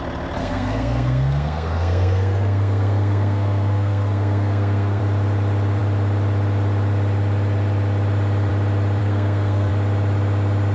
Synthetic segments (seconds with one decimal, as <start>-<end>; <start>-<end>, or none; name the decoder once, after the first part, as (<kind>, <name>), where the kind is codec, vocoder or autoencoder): 0.4-5.0 (codec, SNAC); 9.0-9.7